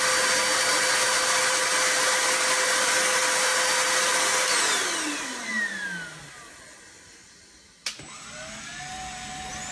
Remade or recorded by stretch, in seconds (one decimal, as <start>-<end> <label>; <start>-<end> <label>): 0.0-9.7 recorded